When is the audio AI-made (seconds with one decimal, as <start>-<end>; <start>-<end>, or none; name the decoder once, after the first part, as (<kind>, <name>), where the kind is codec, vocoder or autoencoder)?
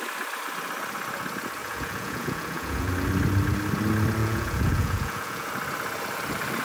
1.6-2.9 (vocoder, Vocos); 4.2-5.5